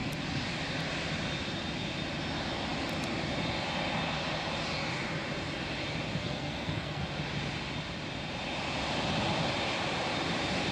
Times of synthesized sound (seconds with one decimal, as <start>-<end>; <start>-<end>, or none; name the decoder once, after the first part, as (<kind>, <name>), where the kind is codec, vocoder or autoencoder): 6.1-7.0 (codec, SNAC)